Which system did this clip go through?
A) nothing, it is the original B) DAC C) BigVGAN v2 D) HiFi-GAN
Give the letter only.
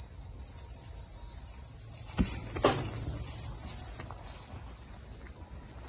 A